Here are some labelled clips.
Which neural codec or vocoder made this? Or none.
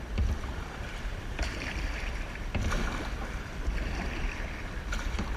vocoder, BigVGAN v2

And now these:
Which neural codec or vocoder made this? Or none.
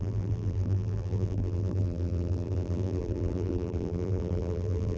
vocoder, BigVGAN v2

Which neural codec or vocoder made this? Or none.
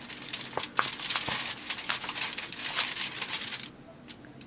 none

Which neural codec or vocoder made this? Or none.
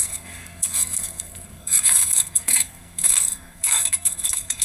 codec, SNAC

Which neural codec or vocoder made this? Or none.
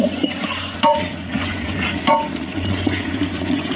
vocoder, Vocos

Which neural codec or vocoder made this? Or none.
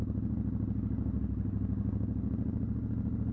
none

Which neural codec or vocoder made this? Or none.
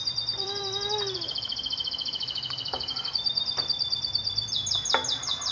vocoder, BigVGAN v2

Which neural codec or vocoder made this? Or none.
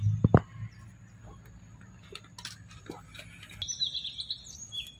none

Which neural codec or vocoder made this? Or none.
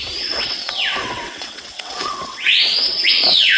vocoder, WaveNeXt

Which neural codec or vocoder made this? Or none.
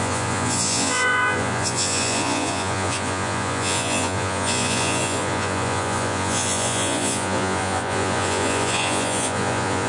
vocoder, Vocos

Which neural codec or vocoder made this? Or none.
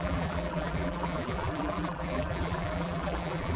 vocoder, BigVGAN v2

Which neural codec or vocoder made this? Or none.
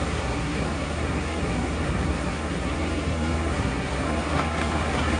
codec, SNAC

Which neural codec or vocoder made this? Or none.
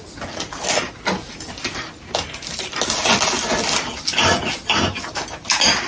none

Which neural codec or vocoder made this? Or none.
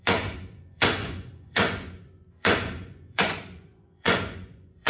vocoder, Vocos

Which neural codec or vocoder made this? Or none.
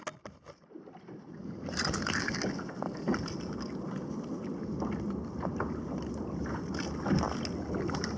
none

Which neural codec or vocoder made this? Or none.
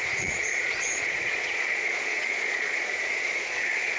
vocoder, Vocos